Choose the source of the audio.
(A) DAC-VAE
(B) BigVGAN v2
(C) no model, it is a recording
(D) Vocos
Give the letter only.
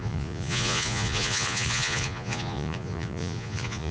D